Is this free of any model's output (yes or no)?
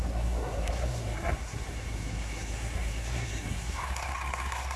no